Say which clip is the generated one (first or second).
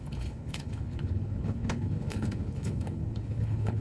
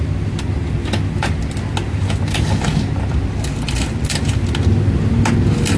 first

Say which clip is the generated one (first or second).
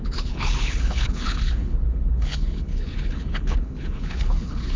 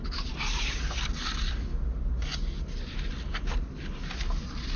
first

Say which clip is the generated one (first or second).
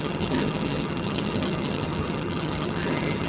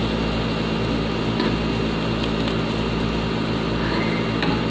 first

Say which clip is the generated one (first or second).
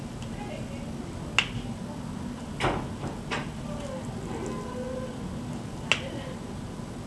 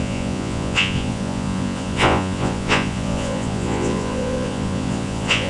second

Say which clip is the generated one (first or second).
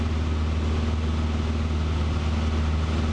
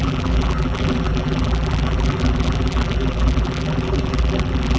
second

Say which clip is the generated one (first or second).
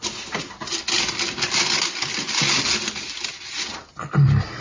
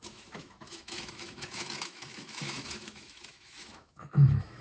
second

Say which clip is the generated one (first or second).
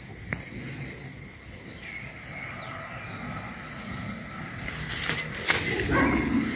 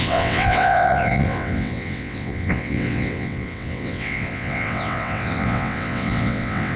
second